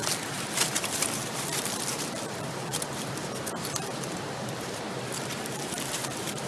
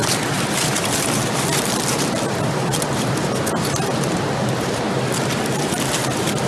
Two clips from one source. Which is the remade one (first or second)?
first